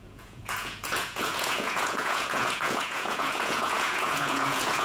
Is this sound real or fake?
fake